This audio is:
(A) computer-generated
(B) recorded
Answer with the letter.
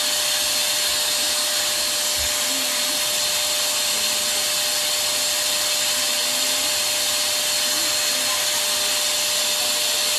B